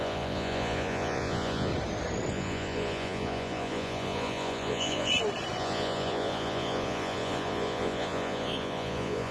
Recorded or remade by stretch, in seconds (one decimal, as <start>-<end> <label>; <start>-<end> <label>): 0.0-1.7 remade; 1.7-2.3 recorded; 2.3-5.1 remade; 5.1-5.6 recorded; 5.6-9.3 remade